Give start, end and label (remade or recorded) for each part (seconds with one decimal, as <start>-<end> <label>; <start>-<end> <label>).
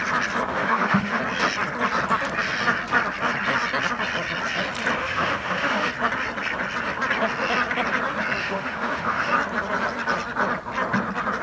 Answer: 0.0-0.5 recorded; 0.5-1.2 remade; 1.2-5.0 recorded; 5.0-5.9 remade; 5.9-8.4 recorded; 8.4-9.3 remade; 9.3-11.4 recorded